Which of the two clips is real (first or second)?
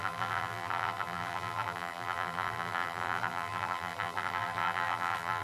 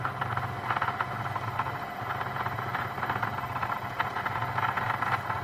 second